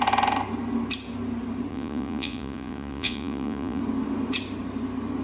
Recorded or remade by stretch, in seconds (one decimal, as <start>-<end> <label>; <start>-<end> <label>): 0.0-1.7 recorded; 1.7-3.8 remade; 3.8-5.2 recorded